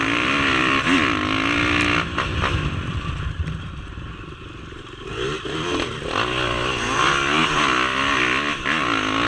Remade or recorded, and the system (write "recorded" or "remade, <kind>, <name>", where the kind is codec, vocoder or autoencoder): recorded